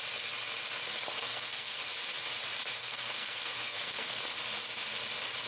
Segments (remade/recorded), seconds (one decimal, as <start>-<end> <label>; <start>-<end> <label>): 0.0-1.2 recorded; 1.2-1.8 remade; 1.8-2.8 recorded; 2.8-4.2 remade; 4.2-5.5 recorded